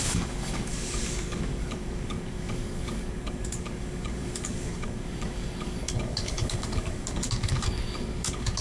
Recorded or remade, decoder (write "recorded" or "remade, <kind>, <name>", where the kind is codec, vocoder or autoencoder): remade, codec, DAC